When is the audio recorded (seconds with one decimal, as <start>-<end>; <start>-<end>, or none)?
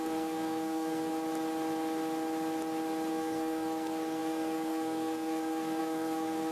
1.1-3.1